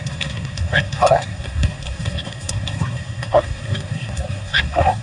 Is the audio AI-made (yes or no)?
yes